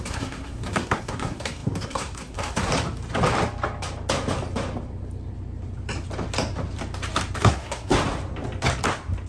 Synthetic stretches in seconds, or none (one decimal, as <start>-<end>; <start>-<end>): 0.0-2.7; 7.4-7.9